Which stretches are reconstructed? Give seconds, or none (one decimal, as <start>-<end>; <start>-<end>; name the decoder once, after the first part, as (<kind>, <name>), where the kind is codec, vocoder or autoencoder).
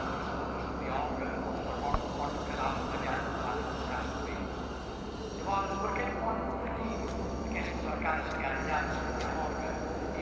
6.6-7.4 (autoencoder, DAC-VAE)